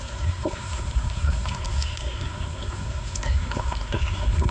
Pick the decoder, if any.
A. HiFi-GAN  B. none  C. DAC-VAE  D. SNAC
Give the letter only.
D